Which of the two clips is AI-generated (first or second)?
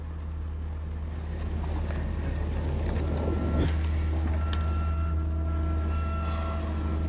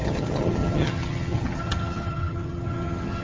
second